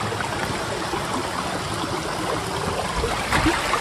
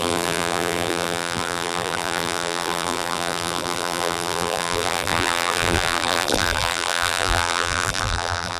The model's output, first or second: second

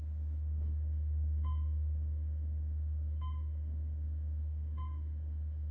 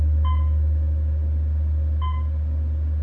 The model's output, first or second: first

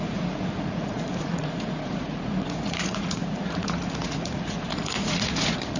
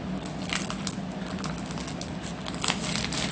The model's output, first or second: first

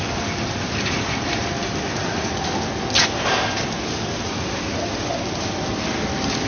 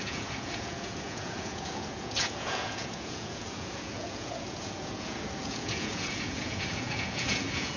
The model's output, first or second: second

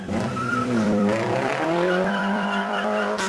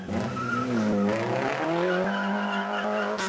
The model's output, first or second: first